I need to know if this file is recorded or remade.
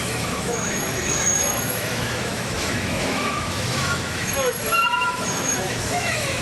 remade